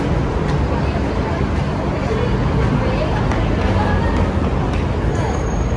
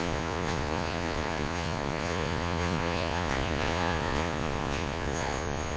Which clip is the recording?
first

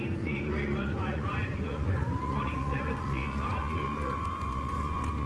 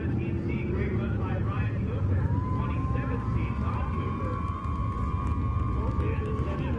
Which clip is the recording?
second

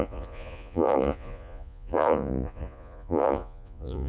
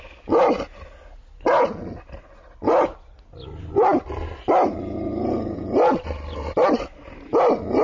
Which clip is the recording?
second